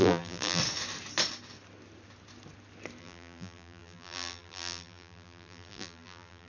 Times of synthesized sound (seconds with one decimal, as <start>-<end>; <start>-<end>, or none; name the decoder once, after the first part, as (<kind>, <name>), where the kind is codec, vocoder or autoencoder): 0.0-0.6 (vocoder, BigVGAN v2); 3.0-6.5